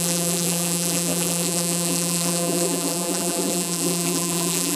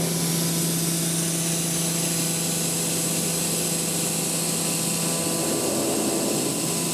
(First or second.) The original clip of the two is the second